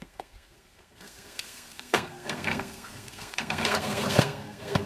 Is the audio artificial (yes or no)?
yes